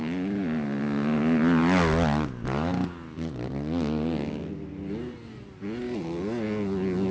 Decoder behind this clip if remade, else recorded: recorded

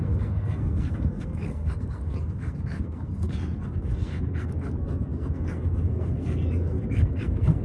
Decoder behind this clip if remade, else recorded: remade, codec, SNAC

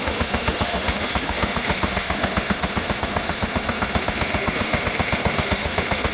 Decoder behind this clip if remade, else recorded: remade, autoencoder, DAC-VAE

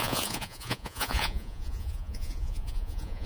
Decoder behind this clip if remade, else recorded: remade, vocoder, Vocos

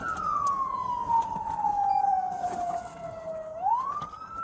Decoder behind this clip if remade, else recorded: recorded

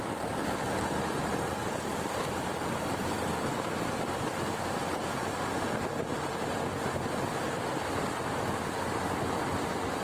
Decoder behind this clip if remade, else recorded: remade, vocoder, BigVGAN v2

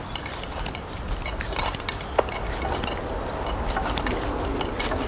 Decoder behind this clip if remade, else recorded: recorded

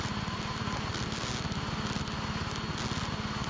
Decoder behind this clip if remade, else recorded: recorded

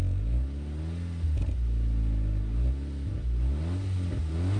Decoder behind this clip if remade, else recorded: recorded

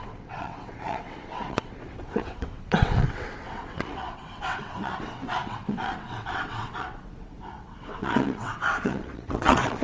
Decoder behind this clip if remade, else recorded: remade, vocoder, WaveNeXt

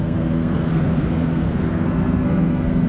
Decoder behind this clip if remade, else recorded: remade, codec, SNAC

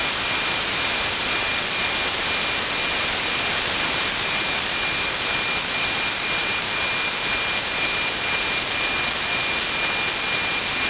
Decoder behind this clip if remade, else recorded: recorded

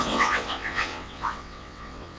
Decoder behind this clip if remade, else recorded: remade, vocoder, WaveNeXt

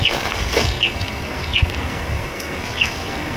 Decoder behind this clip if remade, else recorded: remade, codec, SNAC